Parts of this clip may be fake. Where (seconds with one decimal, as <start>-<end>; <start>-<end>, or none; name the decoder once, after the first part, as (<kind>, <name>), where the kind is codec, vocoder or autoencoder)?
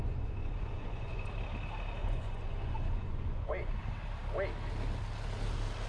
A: 0.0-1.3 (vocoder, Vocos); 2.0-3.8